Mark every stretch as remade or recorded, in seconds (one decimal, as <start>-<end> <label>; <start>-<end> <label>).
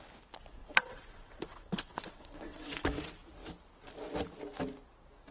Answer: 0.0-0.6 recorded; 0.6-2.9 remade; 2.9-5.3 recorded